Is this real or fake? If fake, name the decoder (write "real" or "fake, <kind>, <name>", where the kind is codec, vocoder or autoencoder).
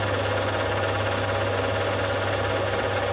real